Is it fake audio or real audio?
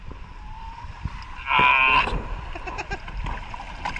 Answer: real